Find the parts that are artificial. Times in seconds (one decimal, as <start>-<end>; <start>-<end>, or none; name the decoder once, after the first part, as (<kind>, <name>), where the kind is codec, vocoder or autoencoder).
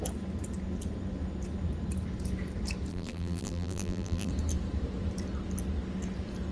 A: 2.9-4.3 (vocoder, BigVGAN v2)